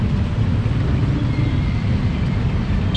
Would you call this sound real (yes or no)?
yes